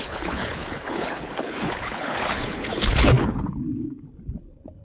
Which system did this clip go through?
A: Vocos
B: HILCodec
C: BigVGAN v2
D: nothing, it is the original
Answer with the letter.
B